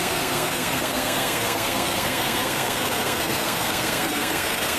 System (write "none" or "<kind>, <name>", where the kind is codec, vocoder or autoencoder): codec, SNAC